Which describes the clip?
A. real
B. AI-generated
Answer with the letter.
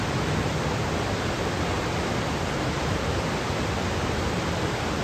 A